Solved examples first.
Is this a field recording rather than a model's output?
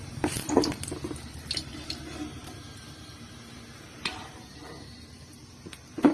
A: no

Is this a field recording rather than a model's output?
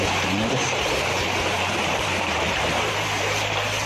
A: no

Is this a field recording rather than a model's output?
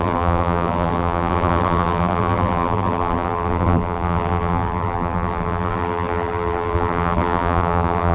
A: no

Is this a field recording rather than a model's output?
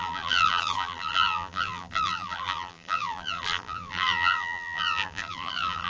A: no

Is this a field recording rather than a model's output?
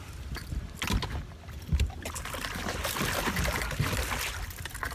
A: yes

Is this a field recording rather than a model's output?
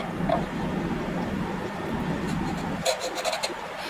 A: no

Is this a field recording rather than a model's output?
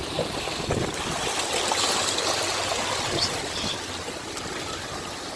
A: yes